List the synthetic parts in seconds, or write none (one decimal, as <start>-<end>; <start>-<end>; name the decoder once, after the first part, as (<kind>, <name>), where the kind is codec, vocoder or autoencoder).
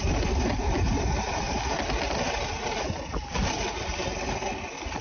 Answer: none